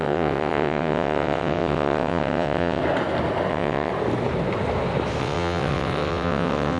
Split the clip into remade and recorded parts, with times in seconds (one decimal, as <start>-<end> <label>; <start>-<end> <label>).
0.0-2.8 remade; 2.8-3.5 recorded; 3.5-3.9 remade; 3.9-5.2 recorded; 5.2-6.8 remade